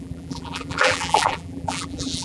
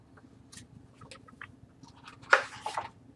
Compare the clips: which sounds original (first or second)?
second